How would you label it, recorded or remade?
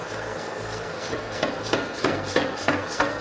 remade